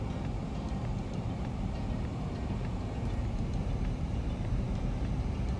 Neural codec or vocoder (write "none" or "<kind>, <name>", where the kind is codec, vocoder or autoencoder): vocoder, BigVGAN v2